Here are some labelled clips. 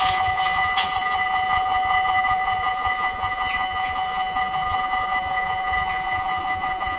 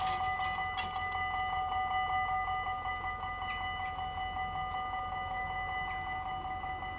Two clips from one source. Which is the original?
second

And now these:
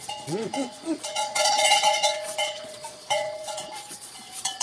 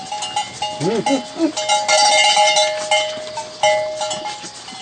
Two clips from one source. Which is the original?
second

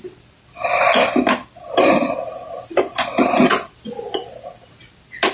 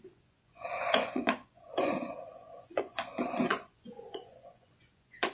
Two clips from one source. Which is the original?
first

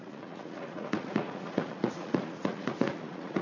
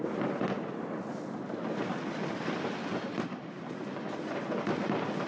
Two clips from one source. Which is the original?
second